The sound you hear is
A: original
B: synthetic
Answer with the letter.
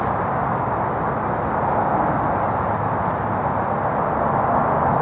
A